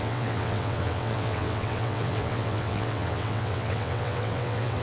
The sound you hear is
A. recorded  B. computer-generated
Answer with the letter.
B